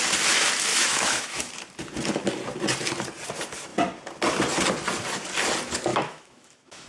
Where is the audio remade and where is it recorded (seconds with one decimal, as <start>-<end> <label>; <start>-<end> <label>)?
0.0-0.7 recorded; 0.7-1.5 remade; 1.5-5.9 recorded; 5.9-6.9 remade